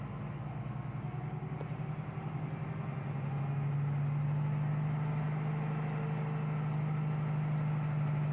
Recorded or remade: recorded